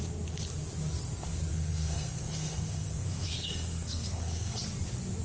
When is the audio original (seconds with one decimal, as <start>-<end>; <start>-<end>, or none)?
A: 0.0-1.5; 4.6-5.2

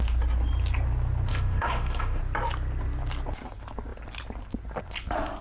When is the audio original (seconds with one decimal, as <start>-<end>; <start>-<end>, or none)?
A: 0.0-1.3; 2.2-5.4

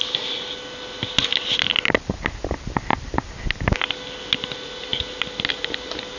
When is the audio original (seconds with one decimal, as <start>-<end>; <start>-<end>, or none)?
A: 0.0-6.2

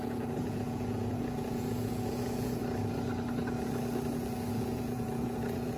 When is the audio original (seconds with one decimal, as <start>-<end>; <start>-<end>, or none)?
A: 2.6-4.5

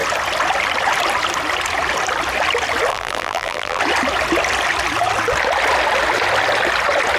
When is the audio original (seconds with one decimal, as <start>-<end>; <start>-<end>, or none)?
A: 0.0-2.9; 3.8-7.2

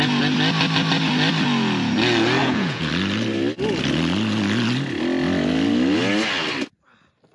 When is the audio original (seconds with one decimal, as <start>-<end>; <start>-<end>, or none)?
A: 0.0-2.4; 2.9-7.3

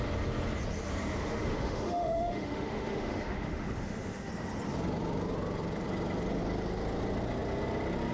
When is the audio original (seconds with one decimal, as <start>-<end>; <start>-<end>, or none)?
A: 0.0-1.0; 4.3-8.1

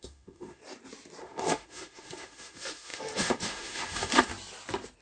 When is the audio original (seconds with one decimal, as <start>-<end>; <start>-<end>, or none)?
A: 0.6-1.2; 4.3-5.0